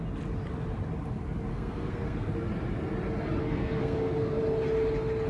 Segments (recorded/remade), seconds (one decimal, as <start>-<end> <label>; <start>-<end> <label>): 0.0-1.5 recorded; 1.5-2.3 remade; 2.3-3.4 recorded; 3.4-4.4 remade; 4.4-5.3 recorded